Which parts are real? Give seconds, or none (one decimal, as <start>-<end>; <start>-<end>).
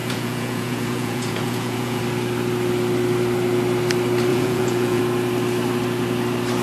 2.0-4.3; 5.0-6.6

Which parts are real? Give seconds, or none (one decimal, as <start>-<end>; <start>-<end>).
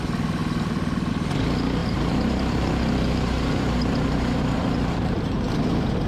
0.0-1.8; 5.5-6.1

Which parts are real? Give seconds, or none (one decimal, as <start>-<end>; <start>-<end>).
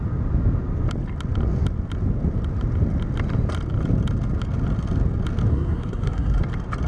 0.0-5.5; 6.4-6.9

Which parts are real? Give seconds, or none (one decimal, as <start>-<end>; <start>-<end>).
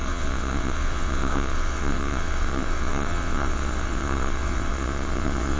none